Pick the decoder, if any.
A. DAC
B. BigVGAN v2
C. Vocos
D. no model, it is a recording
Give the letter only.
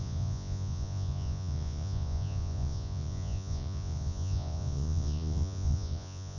C